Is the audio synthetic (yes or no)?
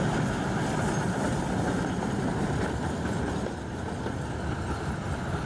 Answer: no